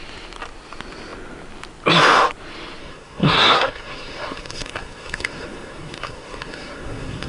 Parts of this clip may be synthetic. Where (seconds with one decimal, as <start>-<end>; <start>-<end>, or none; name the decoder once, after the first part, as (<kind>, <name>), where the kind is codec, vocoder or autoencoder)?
2.8-7.3 (codec, SNAC)